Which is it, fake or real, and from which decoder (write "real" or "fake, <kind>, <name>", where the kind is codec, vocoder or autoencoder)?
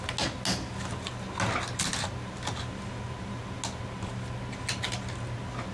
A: real